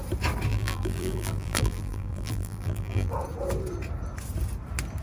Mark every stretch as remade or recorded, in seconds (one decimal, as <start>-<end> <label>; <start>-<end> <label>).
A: 0.0-0.5 recorded; 0.5-3.1 remade; 3.1-5.0 recorded